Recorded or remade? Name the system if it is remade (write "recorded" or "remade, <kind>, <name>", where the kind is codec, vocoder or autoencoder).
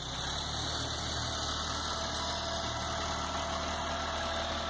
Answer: recorded